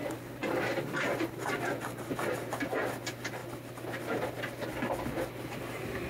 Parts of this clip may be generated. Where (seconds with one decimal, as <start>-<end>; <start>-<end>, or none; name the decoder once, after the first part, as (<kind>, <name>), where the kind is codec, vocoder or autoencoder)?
3.4-6.1 (vocoder, BigVGAN v2)